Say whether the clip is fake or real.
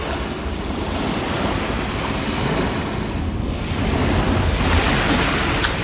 real